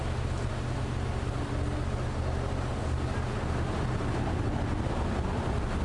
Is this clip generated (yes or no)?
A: no